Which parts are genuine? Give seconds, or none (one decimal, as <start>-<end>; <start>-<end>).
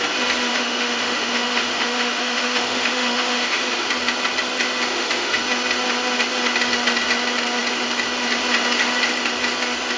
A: 0.0-0.5; 3.9-4.9; 5.4-10.0